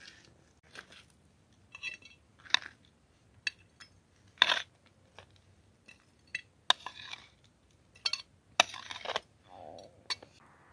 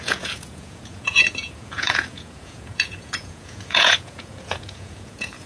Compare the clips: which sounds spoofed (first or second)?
second